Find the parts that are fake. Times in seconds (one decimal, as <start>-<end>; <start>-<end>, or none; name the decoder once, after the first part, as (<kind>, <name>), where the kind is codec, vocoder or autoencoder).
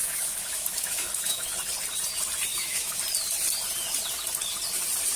0.0-1.5 (autoencoder, DAC-VAE); 2.5-3.0